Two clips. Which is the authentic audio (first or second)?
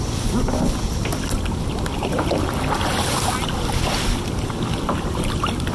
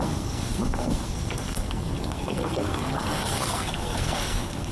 first